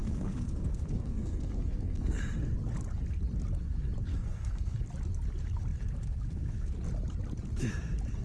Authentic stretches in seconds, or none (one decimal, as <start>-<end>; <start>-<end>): 2.2-4.1; 4.8-8.2